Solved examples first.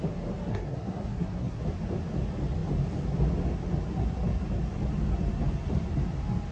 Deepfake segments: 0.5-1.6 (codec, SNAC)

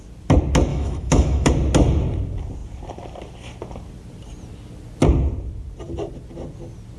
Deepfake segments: 0.7-1.5 (autoencoder, DAC-VAE)

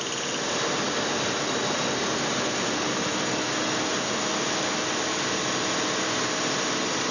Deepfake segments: none

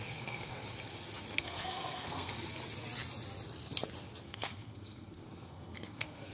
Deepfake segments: 0.0-0.6 (codec, SNAC); 1.4-2.3; 4.2-6.3

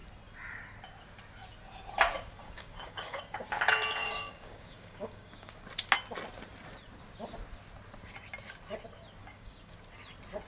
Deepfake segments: 2.4-3.2 (codec, DAC); 4.0-5.5; 9.2-9.7